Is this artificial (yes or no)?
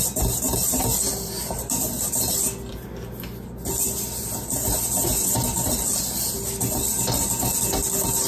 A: no